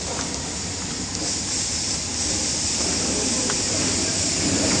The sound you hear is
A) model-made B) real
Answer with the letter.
B